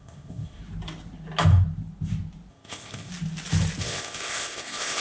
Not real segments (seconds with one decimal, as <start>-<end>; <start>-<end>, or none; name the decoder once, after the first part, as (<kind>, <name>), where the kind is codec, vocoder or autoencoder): 0.0-0.6 (codec, ZipCodec); 2.5-3.1; 3.8-5.0